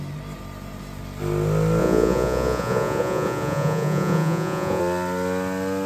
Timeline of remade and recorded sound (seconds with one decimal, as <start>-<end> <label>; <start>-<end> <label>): 0.0-1.8 recorded; 1.8-4.8 remade; 4.8-5.9 recorded